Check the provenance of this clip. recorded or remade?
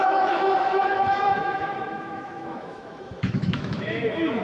remade